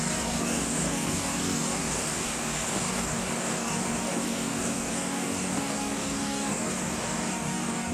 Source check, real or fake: fake